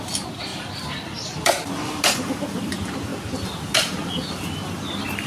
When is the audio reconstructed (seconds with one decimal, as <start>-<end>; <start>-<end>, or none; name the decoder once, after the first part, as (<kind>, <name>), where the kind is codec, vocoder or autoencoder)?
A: 0.5-2.0 (vocoder, BigVGAN v2)